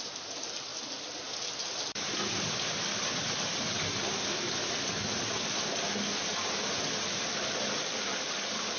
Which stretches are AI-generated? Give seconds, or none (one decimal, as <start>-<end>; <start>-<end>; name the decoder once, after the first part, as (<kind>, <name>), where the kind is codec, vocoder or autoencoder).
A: none